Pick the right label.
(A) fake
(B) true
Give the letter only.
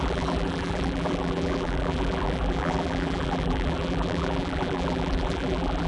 A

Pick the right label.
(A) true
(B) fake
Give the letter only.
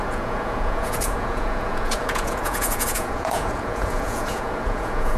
B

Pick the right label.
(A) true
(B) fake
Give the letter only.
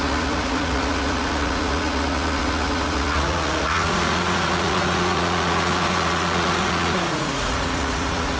B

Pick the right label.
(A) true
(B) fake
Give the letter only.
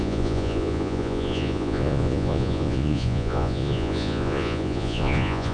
B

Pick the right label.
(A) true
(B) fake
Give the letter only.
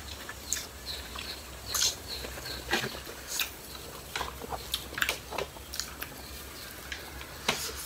A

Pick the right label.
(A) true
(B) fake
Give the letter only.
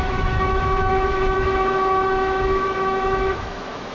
B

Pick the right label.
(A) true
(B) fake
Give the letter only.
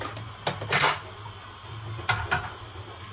A